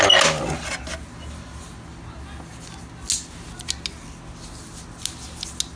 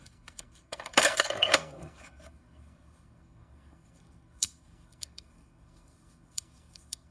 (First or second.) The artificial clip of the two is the second